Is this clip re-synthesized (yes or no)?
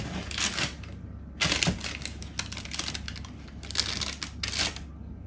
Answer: no